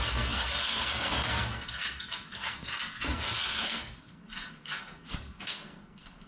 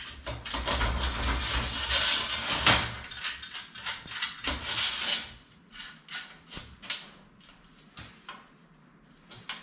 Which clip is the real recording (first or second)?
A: second